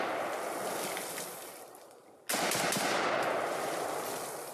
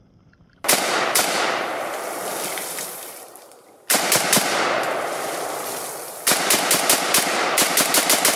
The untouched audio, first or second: first